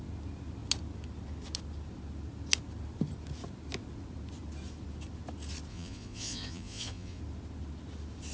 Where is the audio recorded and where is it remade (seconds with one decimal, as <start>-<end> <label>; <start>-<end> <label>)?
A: 0.0-5.7 recorded; 5.7-7.2 remade; 7.2-8.3 recorded